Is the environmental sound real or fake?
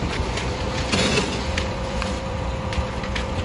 fake